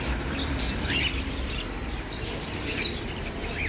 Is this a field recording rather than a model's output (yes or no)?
no